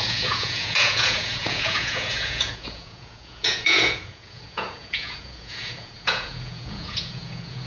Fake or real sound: fake